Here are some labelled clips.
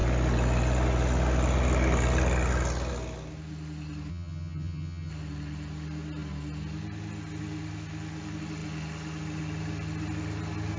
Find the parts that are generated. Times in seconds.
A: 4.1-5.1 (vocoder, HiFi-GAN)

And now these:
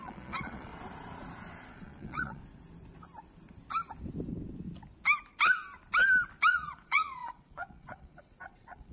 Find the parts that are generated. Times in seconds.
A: 0.0-0.7 (vocoder, Vocos); 1.7-2.4; 6.5-8.9

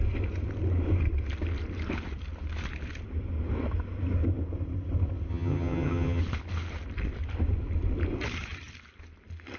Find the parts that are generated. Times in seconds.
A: 5.3-6.2 (vocoder, HiFi-GAN)